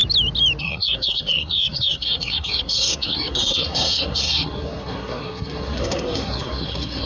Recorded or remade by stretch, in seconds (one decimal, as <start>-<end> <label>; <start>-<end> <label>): 0.0-0.6 recorded; 0.6-7.1 remade